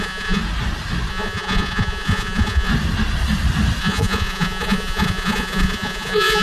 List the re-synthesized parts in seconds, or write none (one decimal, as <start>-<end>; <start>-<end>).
0.0-0.4; 1.1-2.7; 3.8-6.4